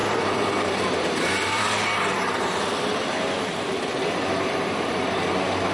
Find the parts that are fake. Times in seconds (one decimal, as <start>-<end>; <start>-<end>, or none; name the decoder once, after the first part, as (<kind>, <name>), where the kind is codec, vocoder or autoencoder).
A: 0.0-1.6 (vocoder, BigVGAN v2); 2.1-2.6; 3.9-5.2